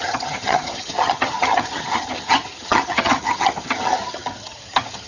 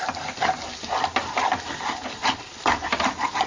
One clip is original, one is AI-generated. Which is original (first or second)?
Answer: second